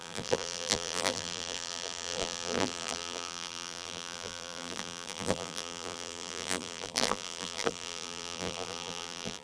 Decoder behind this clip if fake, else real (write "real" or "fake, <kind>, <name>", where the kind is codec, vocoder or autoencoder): fake, vocoder, BigVGAN v2